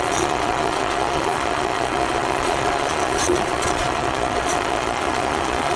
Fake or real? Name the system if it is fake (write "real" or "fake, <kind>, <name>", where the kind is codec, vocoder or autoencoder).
fake, vocoder, Vocos